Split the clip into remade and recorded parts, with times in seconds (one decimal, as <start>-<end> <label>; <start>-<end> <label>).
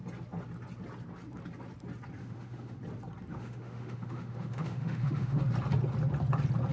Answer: 0.0-2.2 recorded; 2.2-2.8 remade; 2.8-3.3 recorded; 3.3-5.4 remade; 5.4-6.7 recorded